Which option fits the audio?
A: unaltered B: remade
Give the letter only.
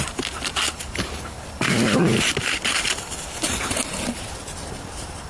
A